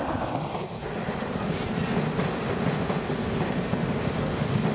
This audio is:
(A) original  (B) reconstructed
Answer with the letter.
A